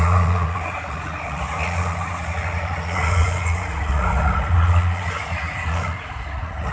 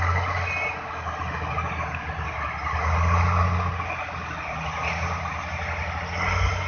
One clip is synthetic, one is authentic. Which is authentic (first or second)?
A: second